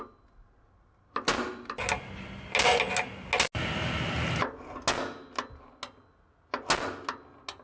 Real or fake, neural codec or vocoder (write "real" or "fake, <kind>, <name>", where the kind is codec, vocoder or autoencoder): real